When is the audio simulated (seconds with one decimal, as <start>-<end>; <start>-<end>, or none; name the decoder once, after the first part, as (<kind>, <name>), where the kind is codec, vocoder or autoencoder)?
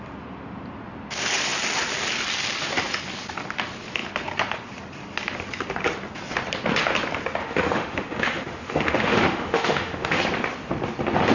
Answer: 7.4-10.2 (autoencoder, DAC-VAE)